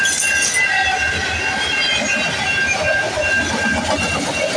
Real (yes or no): yes